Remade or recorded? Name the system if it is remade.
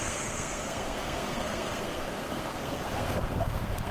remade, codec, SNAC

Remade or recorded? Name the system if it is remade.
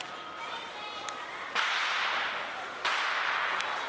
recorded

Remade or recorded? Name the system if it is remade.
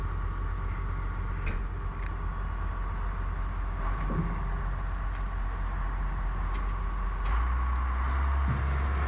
recorded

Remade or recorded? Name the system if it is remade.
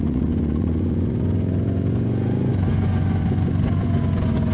remade, vocoder, Vocos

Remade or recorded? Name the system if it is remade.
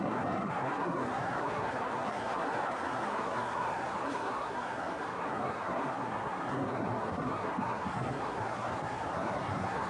remade, codec, SNAC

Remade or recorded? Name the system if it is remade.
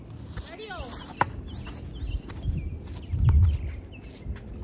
recorded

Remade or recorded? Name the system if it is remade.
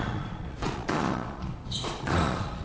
remade, vocoder, Vocos